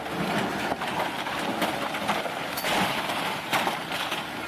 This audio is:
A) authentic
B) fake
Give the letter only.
A